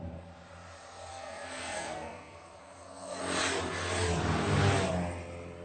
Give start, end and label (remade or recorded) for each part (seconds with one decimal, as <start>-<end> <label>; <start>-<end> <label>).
0.0-1.1 recorded; 1.1-3.2 remade; 3.2-5.6 recorded